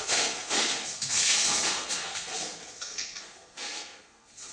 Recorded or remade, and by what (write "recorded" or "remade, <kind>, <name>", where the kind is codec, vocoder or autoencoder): remade, codec, SNAC